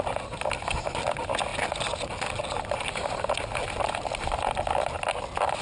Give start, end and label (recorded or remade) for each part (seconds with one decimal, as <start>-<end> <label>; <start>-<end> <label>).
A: 0.0-5.6 recorded